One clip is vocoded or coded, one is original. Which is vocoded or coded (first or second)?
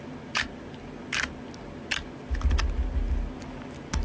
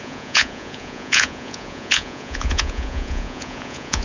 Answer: second